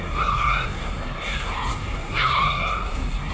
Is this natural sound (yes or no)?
no